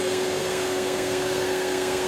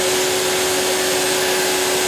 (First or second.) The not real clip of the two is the first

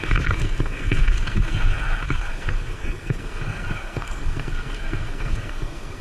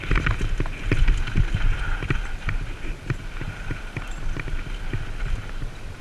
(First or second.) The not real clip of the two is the first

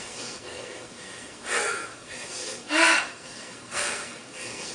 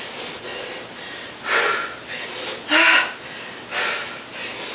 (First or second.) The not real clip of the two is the first